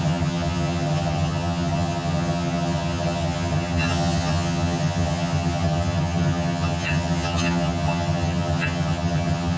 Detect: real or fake fake